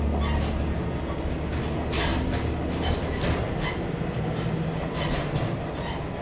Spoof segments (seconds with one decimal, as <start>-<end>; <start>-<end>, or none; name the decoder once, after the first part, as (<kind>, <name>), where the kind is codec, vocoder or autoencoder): none